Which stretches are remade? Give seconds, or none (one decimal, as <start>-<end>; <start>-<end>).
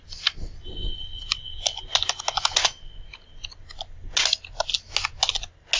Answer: none